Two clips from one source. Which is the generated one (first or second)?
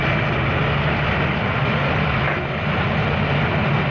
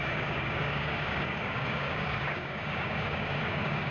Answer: second